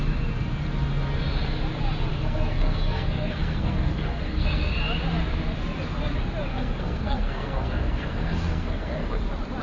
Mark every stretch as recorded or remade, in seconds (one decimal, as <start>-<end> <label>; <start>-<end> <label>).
0.0-2.1 recorded; 2.1-4.7 remade; 4.7-6.5 recorded; 6.5-9.2 remade; 9.2-9.6 recorded